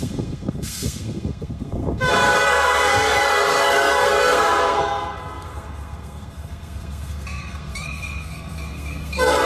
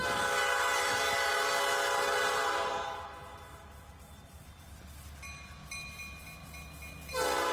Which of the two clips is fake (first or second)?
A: first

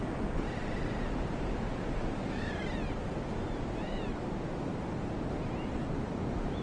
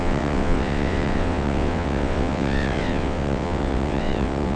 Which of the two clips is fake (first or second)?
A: second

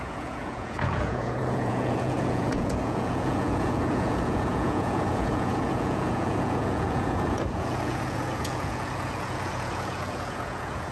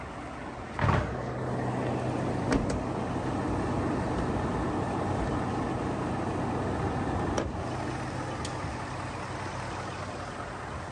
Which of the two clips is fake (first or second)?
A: first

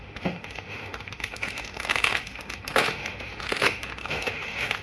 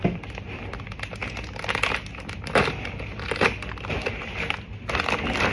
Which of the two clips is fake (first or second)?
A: first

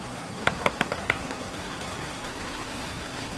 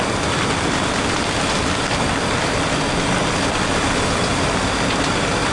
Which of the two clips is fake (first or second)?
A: first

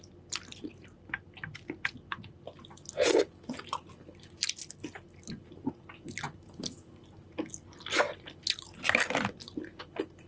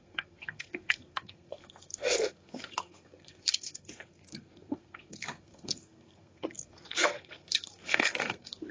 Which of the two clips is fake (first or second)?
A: second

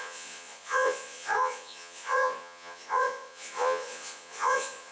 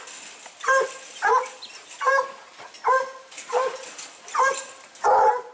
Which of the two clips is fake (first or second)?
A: first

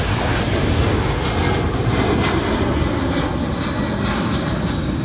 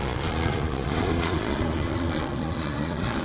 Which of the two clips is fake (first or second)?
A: second